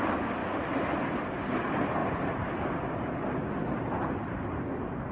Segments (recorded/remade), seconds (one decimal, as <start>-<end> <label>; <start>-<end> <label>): 0.0-5.1 recorded